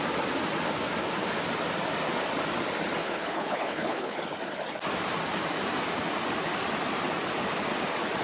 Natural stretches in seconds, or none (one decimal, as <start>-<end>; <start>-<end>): 0.0-3.0; 4.2-8.2